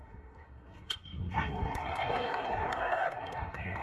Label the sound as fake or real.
fake